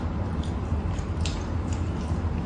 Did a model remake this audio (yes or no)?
yes